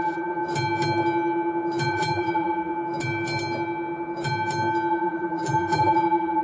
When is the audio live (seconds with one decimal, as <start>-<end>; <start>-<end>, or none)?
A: 0.4-1.9; 2.7-4.9